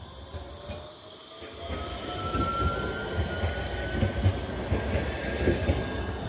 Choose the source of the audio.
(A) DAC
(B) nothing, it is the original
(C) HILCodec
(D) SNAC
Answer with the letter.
B